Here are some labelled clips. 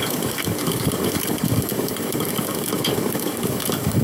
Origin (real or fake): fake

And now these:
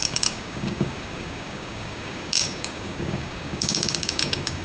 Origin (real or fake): fake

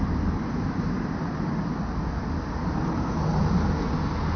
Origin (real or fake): real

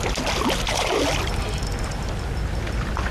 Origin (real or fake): real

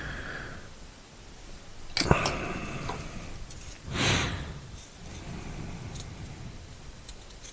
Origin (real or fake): real